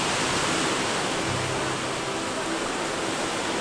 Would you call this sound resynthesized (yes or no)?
no